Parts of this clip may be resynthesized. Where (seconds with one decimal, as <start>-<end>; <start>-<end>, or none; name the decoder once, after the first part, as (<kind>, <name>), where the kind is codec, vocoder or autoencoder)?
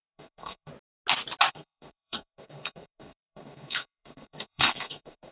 0.0-0.7 (codec, SNAC); 1.5-5.3